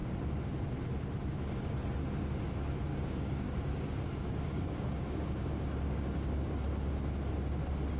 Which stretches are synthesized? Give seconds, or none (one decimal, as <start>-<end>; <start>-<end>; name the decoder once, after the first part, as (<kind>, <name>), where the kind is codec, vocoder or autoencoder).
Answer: 2.9-6.5 (codec, DAC)

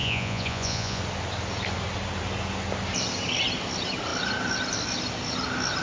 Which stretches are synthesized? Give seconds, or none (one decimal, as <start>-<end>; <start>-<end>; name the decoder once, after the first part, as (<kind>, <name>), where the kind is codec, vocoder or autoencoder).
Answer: 0.0-1.0 (vocoder, Vocos)